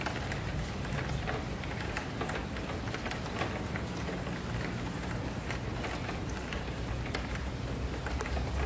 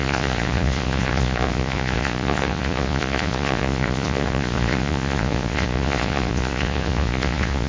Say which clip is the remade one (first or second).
second